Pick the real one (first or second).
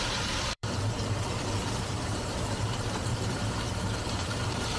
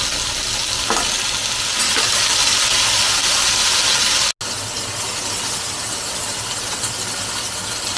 second